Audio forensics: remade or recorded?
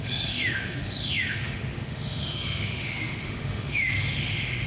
remade